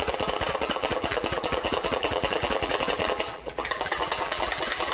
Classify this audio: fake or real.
fake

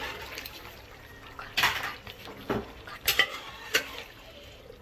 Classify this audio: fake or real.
real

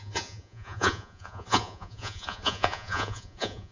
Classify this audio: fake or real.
fake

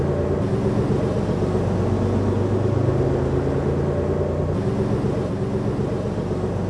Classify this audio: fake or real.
real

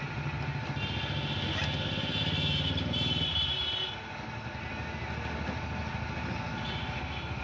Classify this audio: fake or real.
real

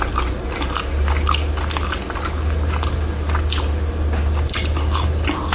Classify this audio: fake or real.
real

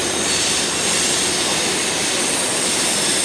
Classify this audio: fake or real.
real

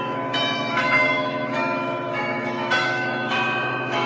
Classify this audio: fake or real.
fake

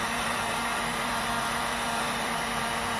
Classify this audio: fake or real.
fake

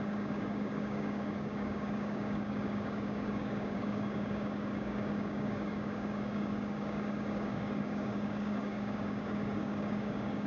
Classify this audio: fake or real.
fake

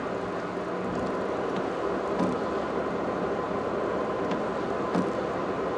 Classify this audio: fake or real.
real